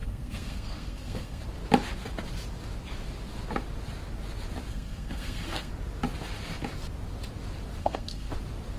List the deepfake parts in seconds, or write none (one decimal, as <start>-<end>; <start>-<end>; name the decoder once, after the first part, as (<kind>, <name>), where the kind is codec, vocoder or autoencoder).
0.0-1.4 (codec, SNAC); 4.7-5.7; 7.8-8.3